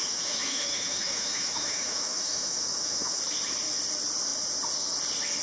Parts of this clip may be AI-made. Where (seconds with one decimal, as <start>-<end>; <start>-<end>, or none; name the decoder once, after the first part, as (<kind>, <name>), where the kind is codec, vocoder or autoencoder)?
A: 0.0-3.2 (autoencoder, DAC-VAE)